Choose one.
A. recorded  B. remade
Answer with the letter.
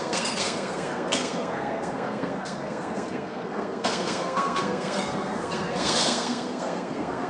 B